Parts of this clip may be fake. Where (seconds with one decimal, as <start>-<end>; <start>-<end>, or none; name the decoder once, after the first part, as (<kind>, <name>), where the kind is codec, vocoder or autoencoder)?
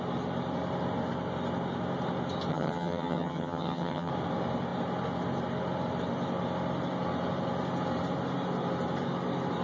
2.5-4.1 (vocoder, HiFi-GAN)